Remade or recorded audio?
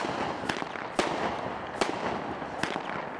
recorded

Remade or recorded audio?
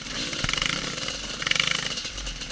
remade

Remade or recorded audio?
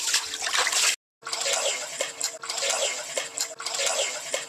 recorded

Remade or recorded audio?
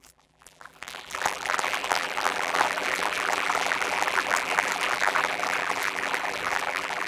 remade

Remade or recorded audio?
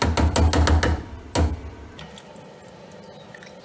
recorded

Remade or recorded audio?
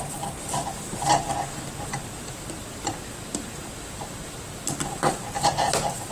remade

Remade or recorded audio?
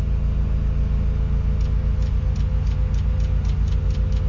recorded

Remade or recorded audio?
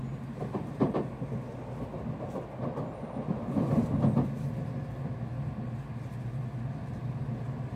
recorded